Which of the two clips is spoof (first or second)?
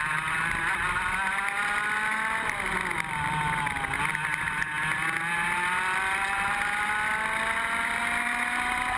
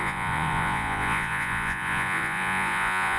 second